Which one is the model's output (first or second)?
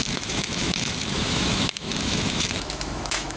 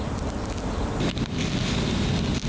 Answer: first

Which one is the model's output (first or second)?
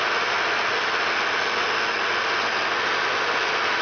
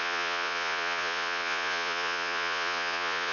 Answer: second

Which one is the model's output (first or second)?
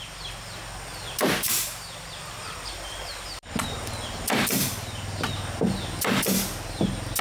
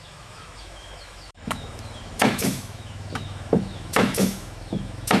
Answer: second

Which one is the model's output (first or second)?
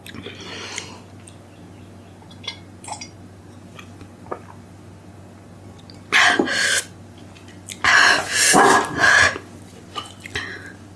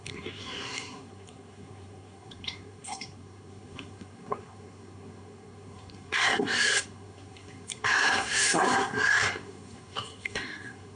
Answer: second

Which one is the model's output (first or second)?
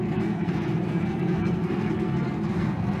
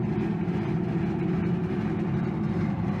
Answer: first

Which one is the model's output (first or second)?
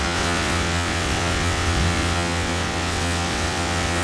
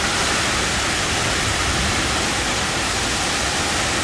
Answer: first